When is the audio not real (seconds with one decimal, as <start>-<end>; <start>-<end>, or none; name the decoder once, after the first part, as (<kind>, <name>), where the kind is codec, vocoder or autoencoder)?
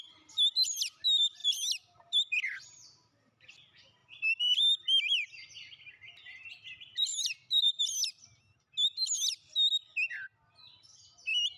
1.4-3.5 (vocoder, BigVGAN v2); 4.0-7.8